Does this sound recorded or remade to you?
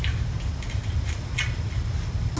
recorded